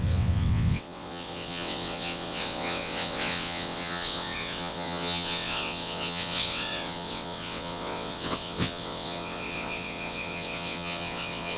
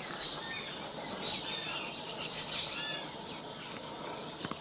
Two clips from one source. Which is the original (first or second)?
second